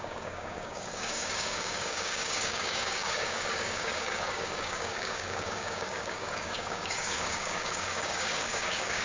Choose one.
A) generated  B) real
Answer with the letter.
A